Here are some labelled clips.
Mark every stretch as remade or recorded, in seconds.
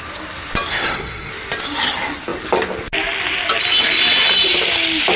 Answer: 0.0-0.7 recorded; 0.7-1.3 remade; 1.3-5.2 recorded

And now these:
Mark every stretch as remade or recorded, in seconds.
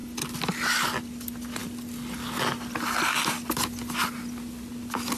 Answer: 0.0-5.2 recorded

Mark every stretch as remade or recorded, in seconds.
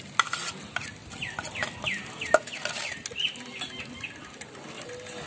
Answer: 0.0-5.3 recorded